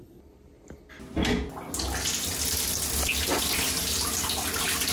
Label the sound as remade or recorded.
recorded